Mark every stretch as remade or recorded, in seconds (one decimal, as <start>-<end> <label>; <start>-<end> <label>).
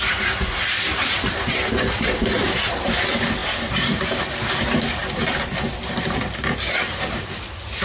0.0-7.8 remade